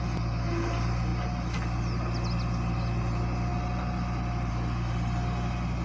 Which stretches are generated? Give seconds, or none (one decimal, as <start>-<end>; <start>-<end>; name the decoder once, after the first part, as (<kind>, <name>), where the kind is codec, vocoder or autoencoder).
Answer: none